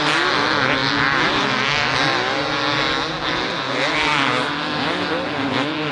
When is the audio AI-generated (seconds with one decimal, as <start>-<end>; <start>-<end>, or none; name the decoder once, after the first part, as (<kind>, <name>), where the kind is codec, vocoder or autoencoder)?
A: none

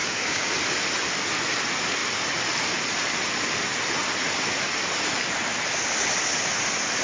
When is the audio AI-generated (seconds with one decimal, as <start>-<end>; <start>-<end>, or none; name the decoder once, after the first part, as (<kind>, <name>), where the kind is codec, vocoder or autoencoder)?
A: 0.0-0.5 (codec, DAC)